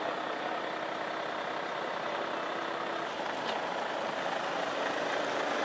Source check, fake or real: real